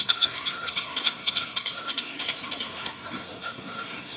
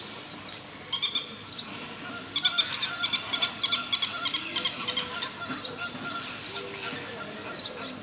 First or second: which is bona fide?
second